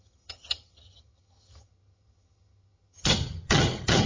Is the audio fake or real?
fake